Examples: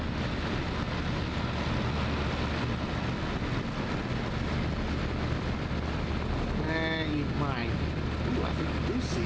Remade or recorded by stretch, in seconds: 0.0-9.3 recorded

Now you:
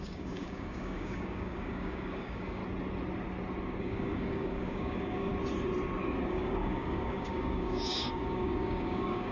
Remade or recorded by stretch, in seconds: 0.0-2.6 remade; 2.6-3.8 recorded; 3.8-5.3 remade; 5.3-6.3 recorded; 6.3-9.3 remade

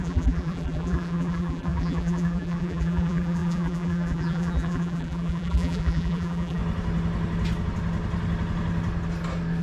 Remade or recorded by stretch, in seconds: 0.0-6.6 remade; 6.6-9.6 recorded

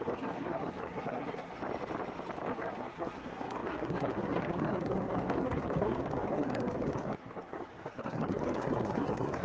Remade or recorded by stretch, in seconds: 0.0-1.6 remade; 1.6-2.5 recorded; 2.5-9.4 remade

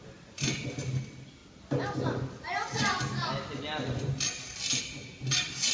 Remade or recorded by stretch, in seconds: 0.0-5.7 recorded

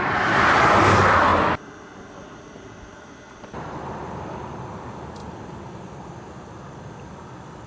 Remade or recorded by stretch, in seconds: 0.0-1.3 remade; 1.3-2.1 recorded; 2.1-7.7 remade